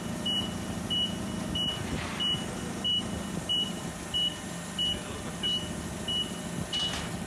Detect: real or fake real